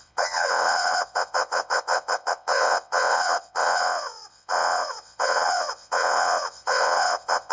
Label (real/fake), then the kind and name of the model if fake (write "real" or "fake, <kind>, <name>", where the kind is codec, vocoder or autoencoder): fake, vocoder, WaveNeXt